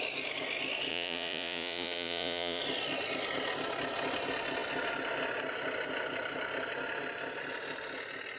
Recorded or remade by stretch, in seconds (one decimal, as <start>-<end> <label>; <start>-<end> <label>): 0.0-0.9 recorded; 0.9-2.6 remade; 2.6-8.4 recorded